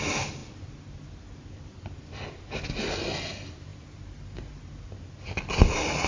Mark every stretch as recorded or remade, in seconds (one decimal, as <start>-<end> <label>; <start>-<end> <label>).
0.0-6.1 recorded

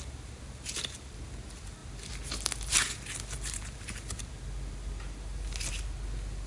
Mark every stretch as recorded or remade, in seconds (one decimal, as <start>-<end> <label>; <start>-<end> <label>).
0.0-6.5 recorded

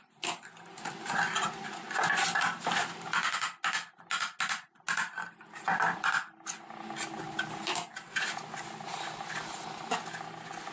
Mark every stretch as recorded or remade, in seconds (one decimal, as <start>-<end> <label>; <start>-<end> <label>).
0.0-10.7 recorded

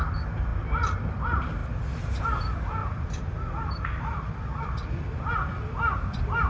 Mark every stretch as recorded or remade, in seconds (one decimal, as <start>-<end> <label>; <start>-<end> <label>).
0.0-2.8 recorded; 2.8-4.3 remade; 4.3-6.5 recorded

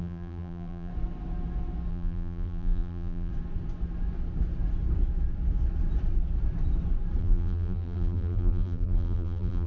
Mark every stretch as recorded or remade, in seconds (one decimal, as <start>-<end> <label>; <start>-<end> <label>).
0.0-0.9 remade; 0.9-1.9 recorded; 1.9-3.3 remade; 3.3-7.2 recorded; 7.2-9.7 remade

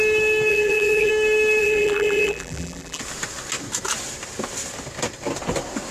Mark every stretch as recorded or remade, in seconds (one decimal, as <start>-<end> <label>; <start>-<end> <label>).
0.0-0.5 recorded; 0.5-1.1 remade; 1.1-1.6 recorded; 1.6-3.0 remade; 3.0-5.9 recorded